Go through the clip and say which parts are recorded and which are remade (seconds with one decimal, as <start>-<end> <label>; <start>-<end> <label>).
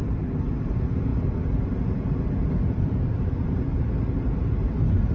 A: 0.0-5.1 recorded